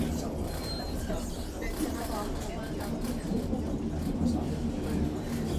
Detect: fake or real real